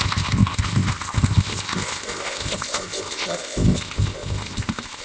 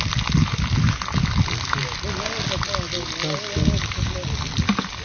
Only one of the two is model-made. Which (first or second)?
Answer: first